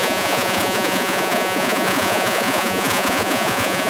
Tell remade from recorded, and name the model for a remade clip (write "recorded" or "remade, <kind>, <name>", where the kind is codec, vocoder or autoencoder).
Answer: remade, vocoder, Vocos